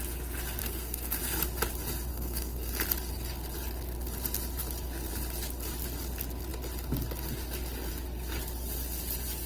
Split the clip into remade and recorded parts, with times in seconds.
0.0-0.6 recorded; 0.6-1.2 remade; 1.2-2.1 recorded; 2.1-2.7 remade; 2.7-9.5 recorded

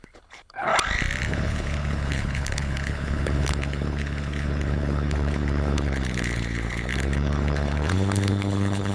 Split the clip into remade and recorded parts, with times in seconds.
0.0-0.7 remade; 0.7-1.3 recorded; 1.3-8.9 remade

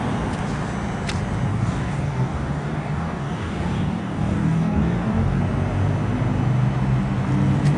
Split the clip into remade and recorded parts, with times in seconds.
0.0-1.5 recorded; 1.5-5.4 remade; 5.4-7.8 recorded

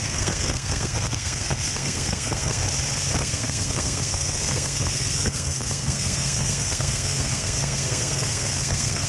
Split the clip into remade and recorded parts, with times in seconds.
0.0-2.6 remade; 2.6-3.2 recorded; 3.2-9.1 remade

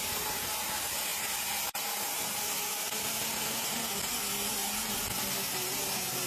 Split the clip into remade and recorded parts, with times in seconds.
0.0-6.3 recorded